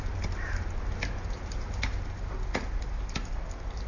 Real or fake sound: real